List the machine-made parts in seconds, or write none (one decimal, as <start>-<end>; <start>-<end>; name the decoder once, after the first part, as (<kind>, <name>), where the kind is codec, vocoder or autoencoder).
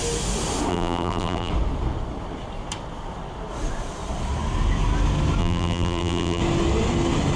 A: 0.7-1.5 (vocoder, BigVGAN v2); 5.4-6.4